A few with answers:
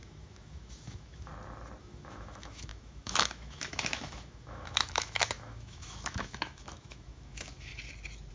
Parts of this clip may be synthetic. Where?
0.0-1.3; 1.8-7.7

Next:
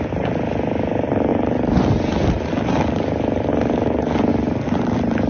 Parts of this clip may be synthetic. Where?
none

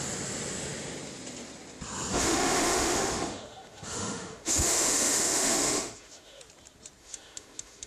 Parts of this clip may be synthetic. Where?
2.1-6.4; 7.0-7.9

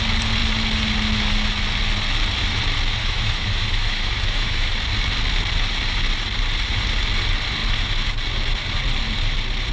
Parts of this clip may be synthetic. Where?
3.0-4.7

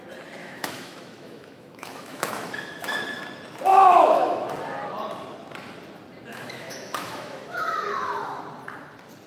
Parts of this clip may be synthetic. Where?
0.4-3.0; 3.7-4.5; 6.3-8.4

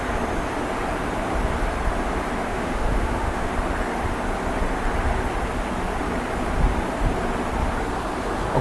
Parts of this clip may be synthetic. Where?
2.5-3.5